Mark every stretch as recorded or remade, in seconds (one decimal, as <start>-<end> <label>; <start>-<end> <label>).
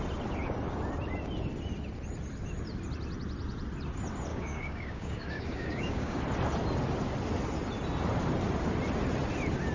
0.0-4.3 recorded; 4.3-6.2 remade; 6.2-9.7 recorded